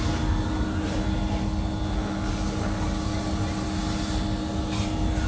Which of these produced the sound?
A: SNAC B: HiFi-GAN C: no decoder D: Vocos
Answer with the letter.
C